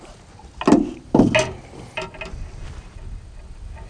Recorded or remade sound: recorded